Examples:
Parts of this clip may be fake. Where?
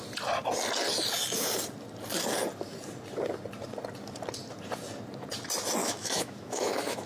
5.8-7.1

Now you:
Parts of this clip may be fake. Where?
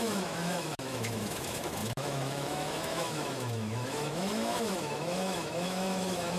0.0-6.4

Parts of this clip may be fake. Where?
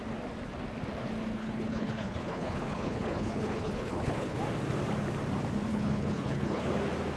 1.4-4.4; 5.7-6.7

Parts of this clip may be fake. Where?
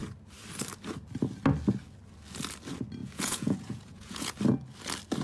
3.0-4.3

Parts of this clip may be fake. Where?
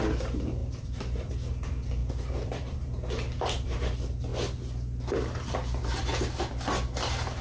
0.6-1.3; 2.0-2.9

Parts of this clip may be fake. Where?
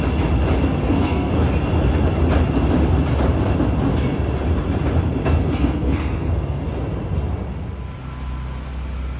0.8-1.3; 5.2-6.6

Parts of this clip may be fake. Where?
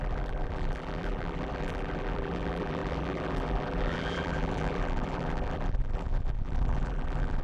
0.0-7.4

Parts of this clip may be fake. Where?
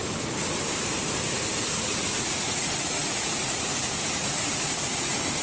1.6-5.4